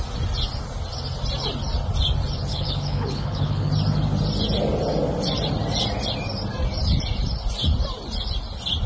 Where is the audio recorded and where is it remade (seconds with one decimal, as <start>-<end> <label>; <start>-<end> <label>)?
0.0-2.5 recorded; 2.5-3.7 remade; 3.7-8.9 recorded